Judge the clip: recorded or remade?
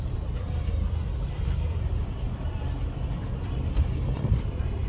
remade